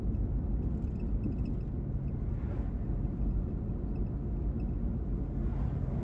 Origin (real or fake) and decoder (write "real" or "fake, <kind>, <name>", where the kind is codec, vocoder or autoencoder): real